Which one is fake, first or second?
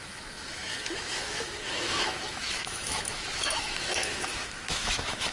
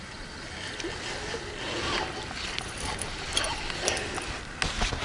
first